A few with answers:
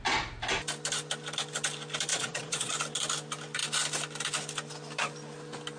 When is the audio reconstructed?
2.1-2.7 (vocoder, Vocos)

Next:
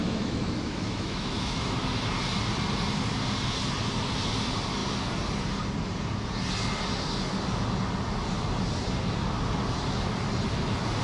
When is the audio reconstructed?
0.0-2.1 (autoencoder, DAC-VAE)